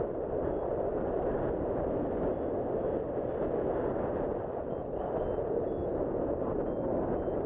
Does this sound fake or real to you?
real